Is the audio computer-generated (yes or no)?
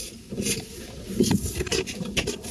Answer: no